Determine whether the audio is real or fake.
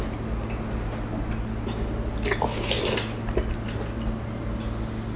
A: real